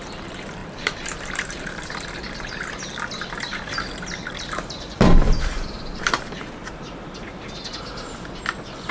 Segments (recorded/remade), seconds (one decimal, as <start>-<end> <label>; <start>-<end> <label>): 0.0-0.6 recorded; 0.6-2.5 remade; 2.5-3.5 recorded; 3.5-6.4 remade; 6.4-8.9 recorded